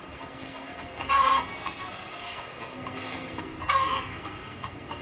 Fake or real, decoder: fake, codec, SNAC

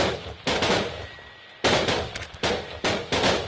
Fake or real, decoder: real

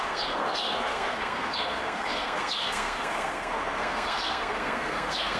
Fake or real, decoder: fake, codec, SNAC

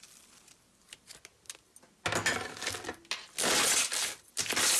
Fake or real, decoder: real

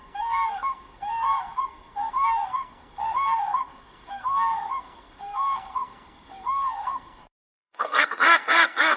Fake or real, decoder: fake, codec, SNAC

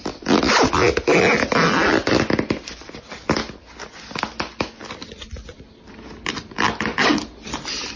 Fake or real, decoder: real